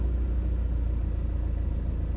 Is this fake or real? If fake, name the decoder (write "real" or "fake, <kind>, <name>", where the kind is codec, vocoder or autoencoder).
real